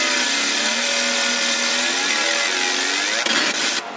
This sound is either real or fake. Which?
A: real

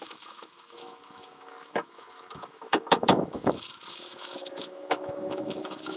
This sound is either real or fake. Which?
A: fake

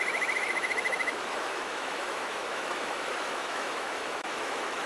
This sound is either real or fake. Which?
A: fake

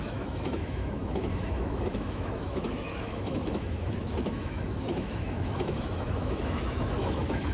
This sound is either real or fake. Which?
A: fake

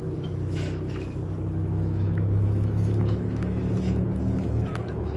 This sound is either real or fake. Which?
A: fake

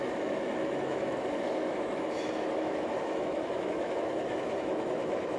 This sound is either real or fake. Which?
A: fake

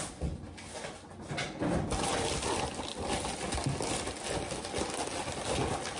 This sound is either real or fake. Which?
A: real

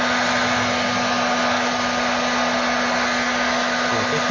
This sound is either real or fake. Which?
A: real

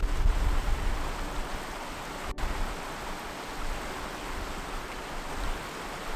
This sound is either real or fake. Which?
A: real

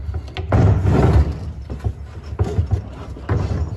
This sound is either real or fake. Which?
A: real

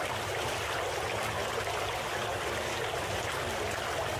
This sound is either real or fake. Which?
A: real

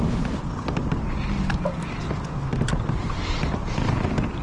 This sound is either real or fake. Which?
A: real